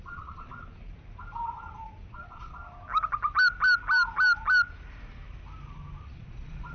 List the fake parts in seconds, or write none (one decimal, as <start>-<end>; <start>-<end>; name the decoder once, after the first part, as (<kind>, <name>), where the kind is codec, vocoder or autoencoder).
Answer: 0.0-0.5 (vocoder, Vocos); 2.1-2.6; 6.0-6.7